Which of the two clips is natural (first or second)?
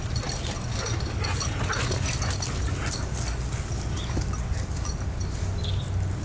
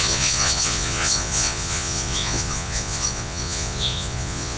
first